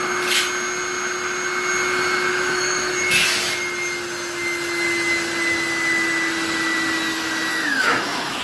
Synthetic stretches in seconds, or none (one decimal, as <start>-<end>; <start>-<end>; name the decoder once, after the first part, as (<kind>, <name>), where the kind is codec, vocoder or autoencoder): 2.3-2.9 (autoencoder, DAC-VAE); 7.5-8.4